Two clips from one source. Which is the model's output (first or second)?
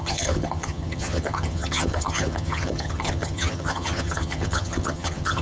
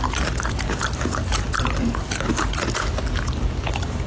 first